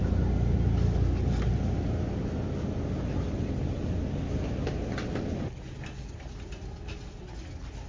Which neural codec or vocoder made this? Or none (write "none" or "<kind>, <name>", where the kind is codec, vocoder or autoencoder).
none